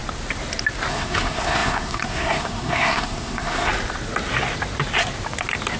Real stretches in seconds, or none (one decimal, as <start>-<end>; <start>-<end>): 0.0-0.9; 3.7-5.8